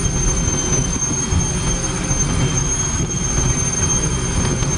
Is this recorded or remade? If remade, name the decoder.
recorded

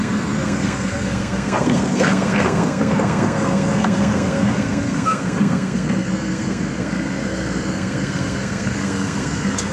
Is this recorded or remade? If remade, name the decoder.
remade, codec, SNAC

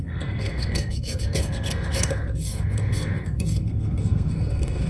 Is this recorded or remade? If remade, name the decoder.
remade, codec, SNAC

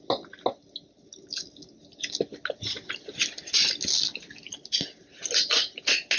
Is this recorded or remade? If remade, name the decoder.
recorded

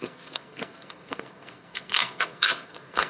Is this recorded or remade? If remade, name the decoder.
remade, codec, SNAC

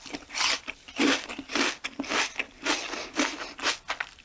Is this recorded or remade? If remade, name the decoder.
recorded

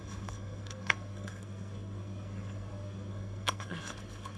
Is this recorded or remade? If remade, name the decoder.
remade, codec, SNAC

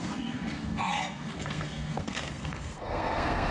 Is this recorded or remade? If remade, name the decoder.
remade, codec, SNAC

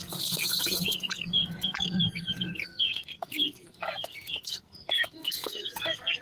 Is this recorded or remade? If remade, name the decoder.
remade, codec, SNAC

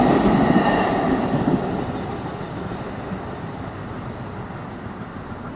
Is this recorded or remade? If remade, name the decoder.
recorded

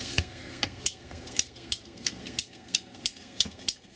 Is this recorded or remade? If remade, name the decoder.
remade, codec, SNAC